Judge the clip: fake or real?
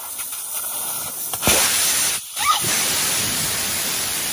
fake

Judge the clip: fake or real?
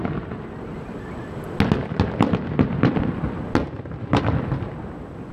real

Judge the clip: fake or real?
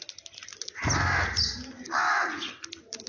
real